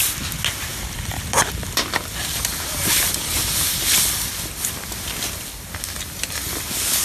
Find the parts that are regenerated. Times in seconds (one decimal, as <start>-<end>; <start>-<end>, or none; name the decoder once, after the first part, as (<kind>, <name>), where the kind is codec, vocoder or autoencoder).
0.7-4.9 (vocoder, BigVGAN v2)